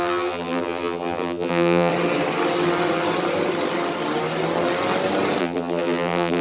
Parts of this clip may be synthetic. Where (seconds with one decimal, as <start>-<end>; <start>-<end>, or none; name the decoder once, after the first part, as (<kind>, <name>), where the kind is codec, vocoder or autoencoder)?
0.0-1.9 (vocoder, BigVGAN v2); 5.4-6.4